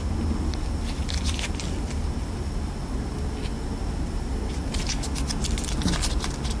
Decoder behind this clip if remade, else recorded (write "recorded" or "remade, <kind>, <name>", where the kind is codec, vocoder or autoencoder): recorded